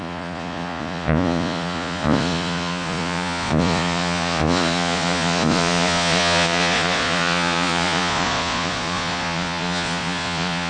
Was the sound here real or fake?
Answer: fake